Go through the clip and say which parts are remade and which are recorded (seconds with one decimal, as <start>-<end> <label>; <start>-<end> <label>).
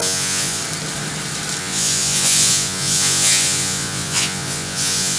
0.0-0.6 remade; 0.6-1.6 recorded; 1.6-5.2 remade